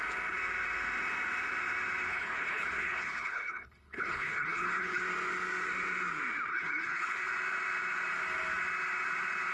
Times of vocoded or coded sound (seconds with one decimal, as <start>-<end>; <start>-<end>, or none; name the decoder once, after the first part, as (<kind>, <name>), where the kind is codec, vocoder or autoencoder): 2.1-5.0 (codec, HILCodec); 6.5-7.2